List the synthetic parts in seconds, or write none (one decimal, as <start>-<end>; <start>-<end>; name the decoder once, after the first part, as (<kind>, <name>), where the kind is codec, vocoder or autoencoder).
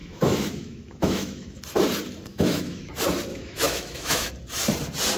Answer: 0.0-1.6 (autoencoder, DAC-VAE); 2.3-2.9; 3.3-4.3